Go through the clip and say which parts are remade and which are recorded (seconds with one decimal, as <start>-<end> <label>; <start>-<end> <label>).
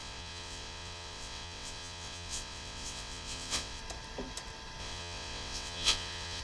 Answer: 0.0-3.8 remade; 3.8-4.8 recorded; 4.8-6.4 remade